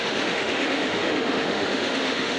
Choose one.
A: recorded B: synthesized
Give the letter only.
B